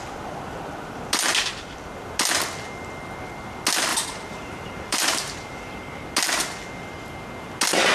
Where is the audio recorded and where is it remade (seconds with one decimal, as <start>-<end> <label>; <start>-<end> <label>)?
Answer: 0.0-3.9 recorded; 3.9-5.8 remade; 5.8-7.9 recorded